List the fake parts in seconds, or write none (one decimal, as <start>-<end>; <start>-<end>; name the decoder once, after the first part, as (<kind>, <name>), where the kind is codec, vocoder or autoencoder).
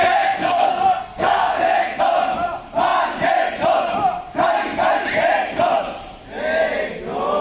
0.0-2.0 (codec, SNAC)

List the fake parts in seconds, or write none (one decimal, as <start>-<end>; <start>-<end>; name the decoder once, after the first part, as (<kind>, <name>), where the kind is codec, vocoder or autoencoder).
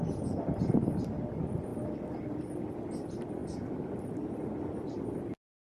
3.4-4.1 (vocoder, BigVGAN v2)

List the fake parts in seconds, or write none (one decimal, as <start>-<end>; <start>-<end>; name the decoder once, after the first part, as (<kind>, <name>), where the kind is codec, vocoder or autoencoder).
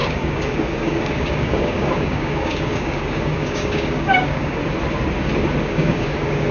0.0-4.6 (codec, DAC); 5.6-6.5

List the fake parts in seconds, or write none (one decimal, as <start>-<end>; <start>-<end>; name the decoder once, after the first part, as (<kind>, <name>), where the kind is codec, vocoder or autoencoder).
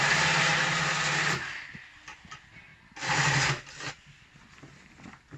none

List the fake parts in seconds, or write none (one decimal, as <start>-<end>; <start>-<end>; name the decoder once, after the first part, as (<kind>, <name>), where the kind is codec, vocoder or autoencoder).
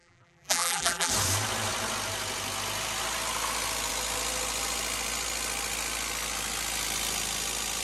0.0-1.1 (vocoder, BigVGAN v2)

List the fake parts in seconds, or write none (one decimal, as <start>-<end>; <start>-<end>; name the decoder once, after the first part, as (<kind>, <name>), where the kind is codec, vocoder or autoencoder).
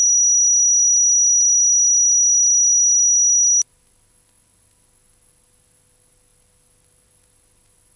none